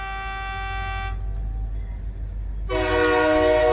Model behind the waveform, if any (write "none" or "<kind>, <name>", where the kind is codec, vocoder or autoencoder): none